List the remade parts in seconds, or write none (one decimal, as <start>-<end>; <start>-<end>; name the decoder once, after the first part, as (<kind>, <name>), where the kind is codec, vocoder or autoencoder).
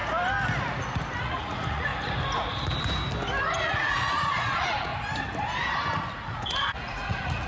1.2-1.9 (vocoder, Vocos); 3.6-4.9; 6.1-7.5